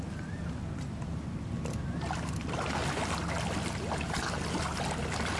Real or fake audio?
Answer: real